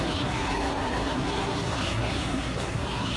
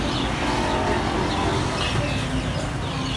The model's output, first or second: first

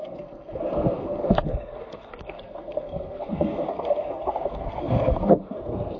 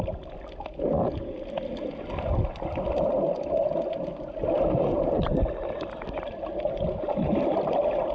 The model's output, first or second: first